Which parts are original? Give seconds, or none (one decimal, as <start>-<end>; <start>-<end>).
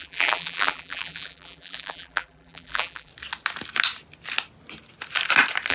3.1-5.7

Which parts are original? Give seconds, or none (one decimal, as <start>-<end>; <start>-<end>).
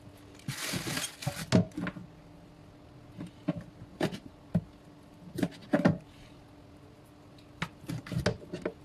0.0-8.8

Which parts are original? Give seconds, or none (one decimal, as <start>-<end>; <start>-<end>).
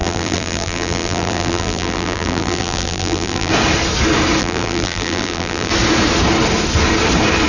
3.5-4.4; 5.7-7.5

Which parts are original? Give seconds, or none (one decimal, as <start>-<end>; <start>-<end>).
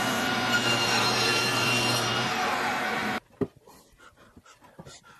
none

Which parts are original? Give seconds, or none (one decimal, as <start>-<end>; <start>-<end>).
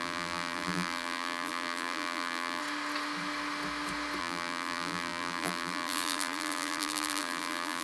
2.6-4.2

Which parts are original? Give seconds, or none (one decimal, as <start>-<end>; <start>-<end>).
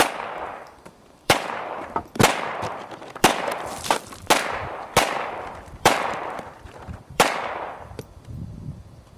none